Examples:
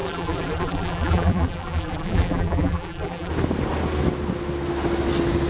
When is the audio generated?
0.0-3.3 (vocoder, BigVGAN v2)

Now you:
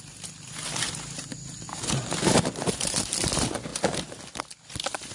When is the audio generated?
none